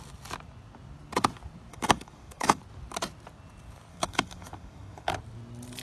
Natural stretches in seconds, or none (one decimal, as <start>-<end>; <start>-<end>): 0.0-1.7; 2.6-3.9; 5.1-5.8